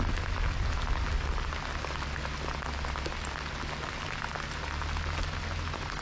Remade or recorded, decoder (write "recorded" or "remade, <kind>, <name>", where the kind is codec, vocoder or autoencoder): recorded